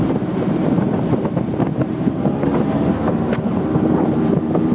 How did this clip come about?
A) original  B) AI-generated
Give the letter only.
B